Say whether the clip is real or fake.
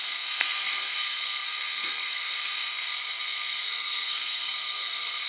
fake